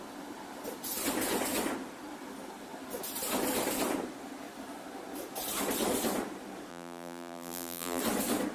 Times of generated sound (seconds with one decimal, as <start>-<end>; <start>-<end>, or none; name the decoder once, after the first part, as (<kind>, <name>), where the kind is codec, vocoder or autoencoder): 6.7-8.0 (vocoder, BigVGAN v2)